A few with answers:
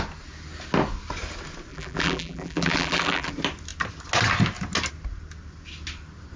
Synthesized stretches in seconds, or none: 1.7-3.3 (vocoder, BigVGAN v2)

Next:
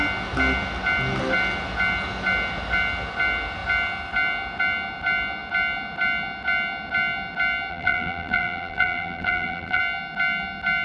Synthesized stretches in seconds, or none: 7.7-9.8 (vocoder, BigVGAN v2)

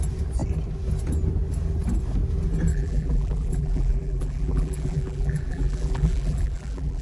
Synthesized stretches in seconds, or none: 2.7-7.0 (vocoder, BigVGAN v2)

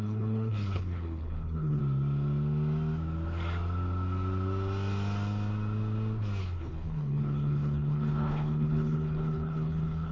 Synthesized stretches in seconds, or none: 0.0-1.8 (codec, HILCodec); 6.4-10.1

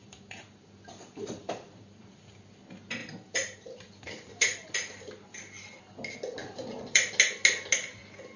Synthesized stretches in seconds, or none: 0.0-2.2 (vocoder, BigVGAN v2); 3.0-5.8; 6.4-7.1

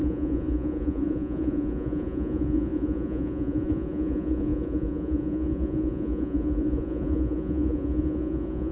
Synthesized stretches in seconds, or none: 0.0-8.7 (vocoder, Vocos)

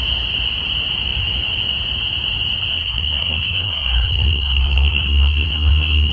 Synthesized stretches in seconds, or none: 2.7-6.1 (codec, SNAC)